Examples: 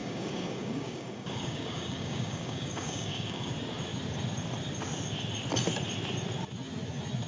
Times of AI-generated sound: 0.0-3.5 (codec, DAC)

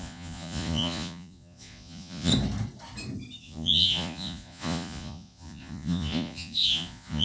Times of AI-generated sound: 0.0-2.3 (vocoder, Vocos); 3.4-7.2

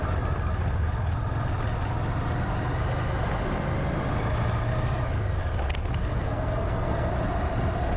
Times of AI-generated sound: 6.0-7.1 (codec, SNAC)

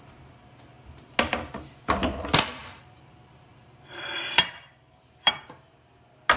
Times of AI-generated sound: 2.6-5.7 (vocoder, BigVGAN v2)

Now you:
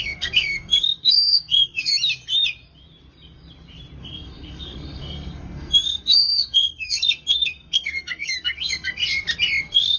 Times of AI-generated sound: 0.0-1.9 (codec, SNAC); 4.0-9.0; 9.6-10.0

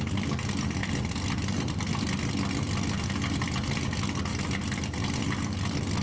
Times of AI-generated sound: 0.8-3.7 (vocoder, BigVGAN v2)

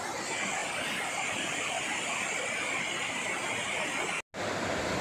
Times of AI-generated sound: 0.6-1.8 (vocoder, BigVGAN v2)